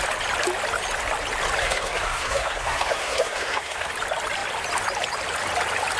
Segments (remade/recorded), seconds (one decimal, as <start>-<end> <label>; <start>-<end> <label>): 0.0-1.6 recorded; 1.6-3.9 remade; 3.9-6.0 recorded